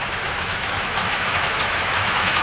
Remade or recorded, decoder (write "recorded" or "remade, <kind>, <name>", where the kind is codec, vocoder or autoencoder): remade, autoencoder, DAC-VAE